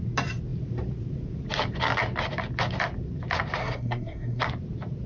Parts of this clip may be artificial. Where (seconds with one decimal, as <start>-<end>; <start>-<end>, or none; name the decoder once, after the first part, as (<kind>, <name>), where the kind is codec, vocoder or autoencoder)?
3.6-4.4 (codec, SNAC)

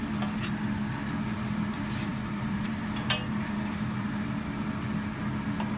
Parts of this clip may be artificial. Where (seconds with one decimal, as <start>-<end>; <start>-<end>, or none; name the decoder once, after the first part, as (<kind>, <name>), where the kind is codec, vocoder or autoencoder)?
2.1-4.3 (vocoder, BigVGAN v2)

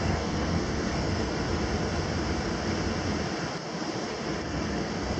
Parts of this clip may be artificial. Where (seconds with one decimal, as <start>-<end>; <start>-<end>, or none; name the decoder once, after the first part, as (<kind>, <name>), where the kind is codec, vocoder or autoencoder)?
0.0-1.3 (codec, SNAC); 4.4-5.2